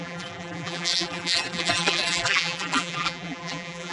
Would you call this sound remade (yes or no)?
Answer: yes